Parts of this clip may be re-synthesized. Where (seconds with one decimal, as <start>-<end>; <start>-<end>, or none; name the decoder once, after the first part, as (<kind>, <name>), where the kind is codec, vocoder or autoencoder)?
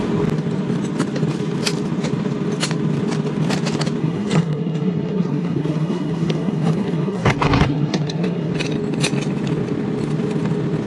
4.0-8.5 (codec, SNAC)